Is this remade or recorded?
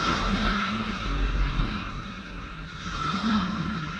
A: remade